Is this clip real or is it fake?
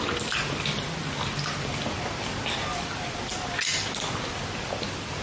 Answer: real